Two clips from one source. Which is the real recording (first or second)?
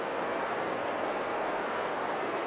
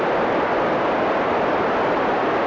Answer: second